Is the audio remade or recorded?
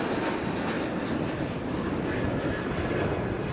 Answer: recorded